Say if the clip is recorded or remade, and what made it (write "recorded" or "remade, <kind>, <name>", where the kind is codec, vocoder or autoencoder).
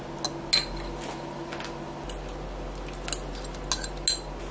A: recorded